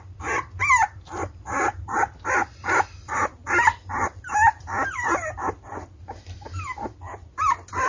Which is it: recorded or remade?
remade